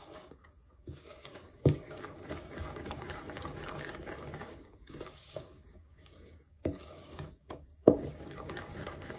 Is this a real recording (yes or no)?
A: no